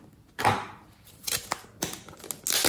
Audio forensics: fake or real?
real